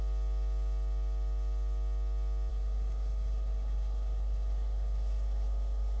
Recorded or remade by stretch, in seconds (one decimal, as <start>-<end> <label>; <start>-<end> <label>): 0.0-2.5 recorded; 2.5-6.0 remade